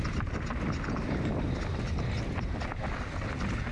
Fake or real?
real